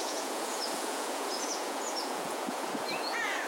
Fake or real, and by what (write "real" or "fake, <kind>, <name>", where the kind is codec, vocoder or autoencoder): fake, vocoder, Vocos